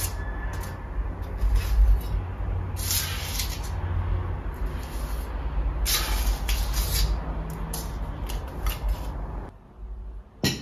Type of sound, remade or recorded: recorded